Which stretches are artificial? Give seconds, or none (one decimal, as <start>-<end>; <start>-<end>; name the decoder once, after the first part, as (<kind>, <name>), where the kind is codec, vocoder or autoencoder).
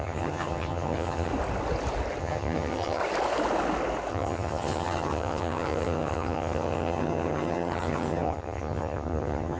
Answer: 0.0-1.3 (vocoder, HiFi-GAN); 2.2-3.0; 4.1-9.6